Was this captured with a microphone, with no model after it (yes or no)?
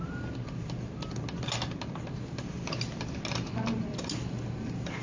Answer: yes